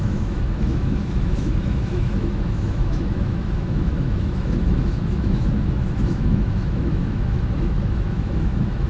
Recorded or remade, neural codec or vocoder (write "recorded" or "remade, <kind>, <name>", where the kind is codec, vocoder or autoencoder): remade, autoencoder, DAC-VAE